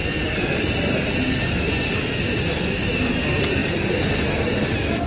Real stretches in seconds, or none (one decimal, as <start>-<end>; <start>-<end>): 0.0-5.1